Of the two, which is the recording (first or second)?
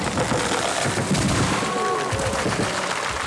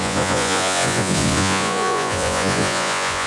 first